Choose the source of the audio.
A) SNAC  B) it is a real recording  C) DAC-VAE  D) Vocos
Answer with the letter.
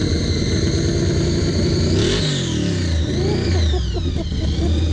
B